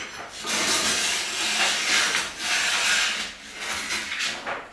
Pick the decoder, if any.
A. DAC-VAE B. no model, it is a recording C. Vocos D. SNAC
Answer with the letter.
B